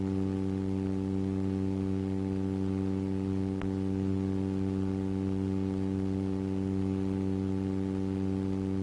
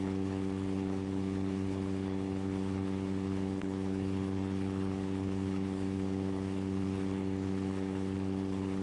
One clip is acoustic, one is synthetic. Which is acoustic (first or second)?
first